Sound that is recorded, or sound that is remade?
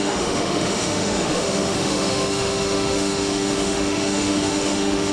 remade